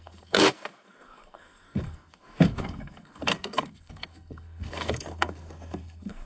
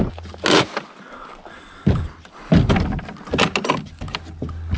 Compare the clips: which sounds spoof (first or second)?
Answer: first